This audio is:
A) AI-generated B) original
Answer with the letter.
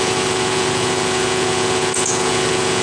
A